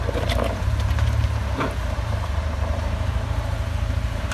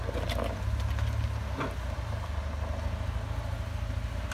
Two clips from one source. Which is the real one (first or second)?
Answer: second